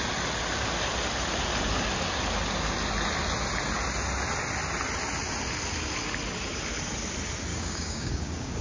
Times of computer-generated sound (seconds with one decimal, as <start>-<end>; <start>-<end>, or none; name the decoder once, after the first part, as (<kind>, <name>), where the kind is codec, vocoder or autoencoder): 7.5-8.6 (codec, DAC)